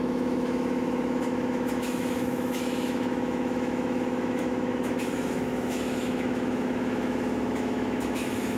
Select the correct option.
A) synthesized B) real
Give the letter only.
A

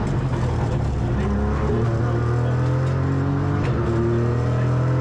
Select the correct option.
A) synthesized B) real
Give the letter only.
B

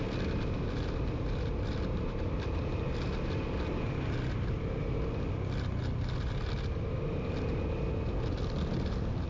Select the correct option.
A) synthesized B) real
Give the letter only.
B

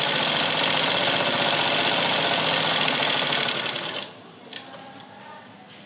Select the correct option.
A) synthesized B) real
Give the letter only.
B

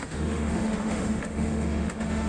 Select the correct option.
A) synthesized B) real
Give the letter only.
A